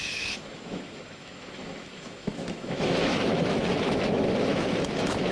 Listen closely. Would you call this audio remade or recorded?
remade